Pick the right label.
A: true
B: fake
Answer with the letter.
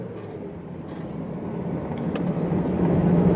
A